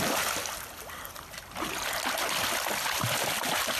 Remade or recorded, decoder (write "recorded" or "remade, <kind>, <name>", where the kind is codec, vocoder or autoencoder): recorded